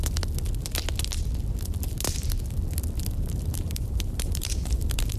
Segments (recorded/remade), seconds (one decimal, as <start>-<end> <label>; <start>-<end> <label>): 0.0-3.5 recorded; 3.5-5.2 remade